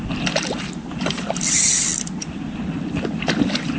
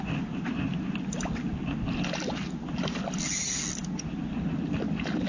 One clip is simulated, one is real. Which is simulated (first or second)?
first